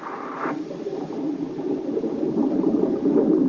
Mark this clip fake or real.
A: real